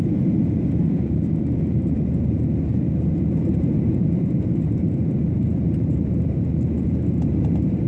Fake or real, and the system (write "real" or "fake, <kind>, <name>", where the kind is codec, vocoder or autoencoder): fake, vocoder, BigVGAN v2